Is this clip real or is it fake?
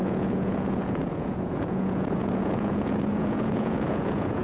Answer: fake